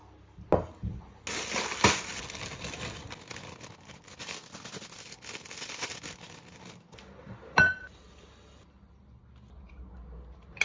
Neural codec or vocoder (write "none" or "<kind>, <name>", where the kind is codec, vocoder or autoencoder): none